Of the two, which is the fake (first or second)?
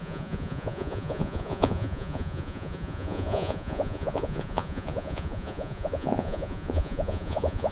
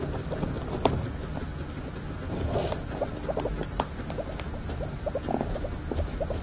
first